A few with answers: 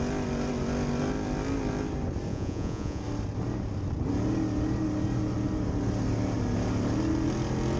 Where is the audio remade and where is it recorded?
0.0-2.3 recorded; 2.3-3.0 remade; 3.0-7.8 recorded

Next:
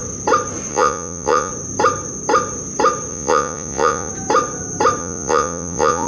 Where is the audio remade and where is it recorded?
0.0-0.7 recorded; 0.7-1.5 remade; 1.5-3.1 recorded; 3.1-4.1 remade; 4.1-5.0 recorded; 5.0-6.1 remade

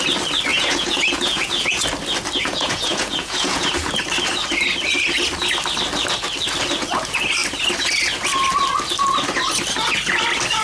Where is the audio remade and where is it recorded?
0.0-0.5 recorded; 0.5-1.8 remade; 1.8-2.4 recorded; 2.4-3.7 remade; 3.7-10.6 recorded

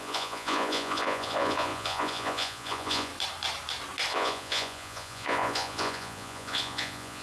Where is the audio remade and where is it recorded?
0.0-3.1 remade; 3.1-4.1 recorded; 4.1-7.2 remade

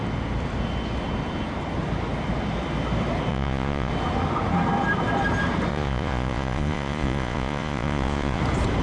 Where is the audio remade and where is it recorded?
0.0-3.3 recorded; 3.3-3.9 remade; 3.9-5.7 recorded; 5.7-8.4 remade; 8.4-8.8 recorded

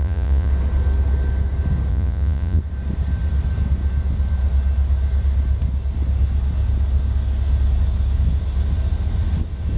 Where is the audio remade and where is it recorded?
0.0-0.5 remade; 0.5-1.9 recorded; 1.9-2.6 remade; 2.6-9.8 recorded

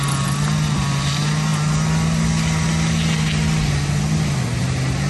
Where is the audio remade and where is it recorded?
0.0-5.1 recorded

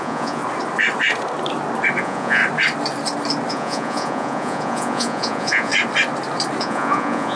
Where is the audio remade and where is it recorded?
0.0-0.4 remade; 0.4-2.0 recorded; 2.0-2.4 remade; 2.4-3.5 recorded; 3.5-5.7 remade; 5.7-6.6 recorded; 6.6-7.4 remade